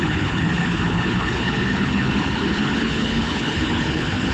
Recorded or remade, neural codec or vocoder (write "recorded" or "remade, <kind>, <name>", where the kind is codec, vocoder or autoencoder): remade, codec, HILCodec